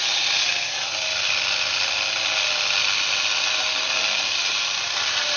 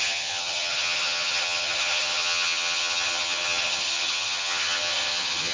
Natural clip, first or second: first